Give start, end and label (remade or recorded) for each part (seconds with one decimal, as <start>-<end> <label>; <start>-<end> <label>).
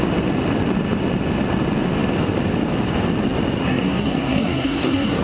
0.0-3.6 recorded; 3.6-5.2 remade